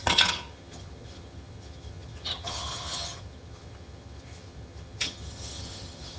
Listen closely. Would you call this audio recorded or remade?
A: remade